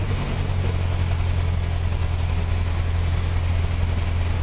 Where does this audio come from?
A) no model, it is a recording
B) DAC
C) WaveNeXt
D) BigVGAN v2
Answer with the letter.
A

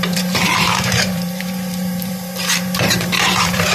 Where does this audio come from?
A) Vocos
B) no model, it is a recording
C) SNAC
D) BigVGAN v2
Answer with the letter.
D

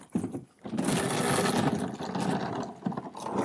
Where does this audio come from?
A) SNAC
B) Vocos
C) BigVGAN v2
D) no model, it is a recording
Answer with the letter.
D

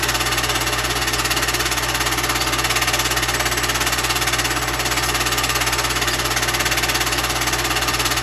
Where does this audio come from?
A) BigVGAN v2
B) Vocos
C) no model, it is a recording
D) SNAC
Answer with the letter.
C